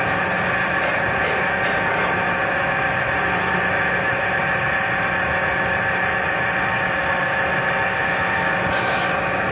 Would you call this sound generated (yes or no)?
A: no